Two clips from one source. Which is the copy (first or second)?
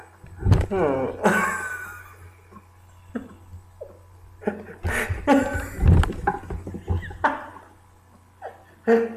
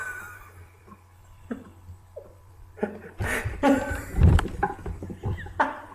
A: second